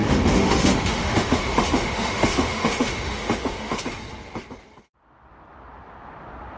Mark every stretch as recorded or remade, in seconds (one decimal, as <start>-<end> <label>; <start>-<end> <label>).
0.0-3.8 remade; 3.8-6.6 recorded